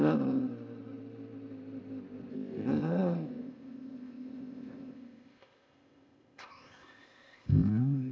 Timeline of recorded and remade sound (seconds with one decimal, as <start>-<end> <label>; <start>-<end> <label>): 0.0-0.4 remade; 0.4-2.3 recorded; 2.3-8.1 remade